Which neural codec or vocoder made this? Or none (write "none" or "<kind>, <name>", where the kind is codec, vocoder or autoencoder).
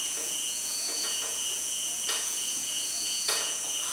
vocoder, Vocos